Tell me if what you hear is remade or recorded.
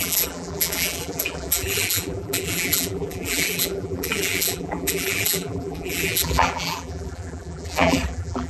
remade